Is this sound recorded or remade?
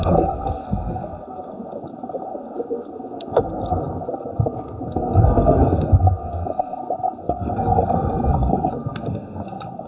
remade